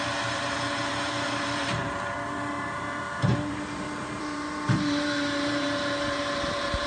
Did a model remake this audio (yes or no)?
yes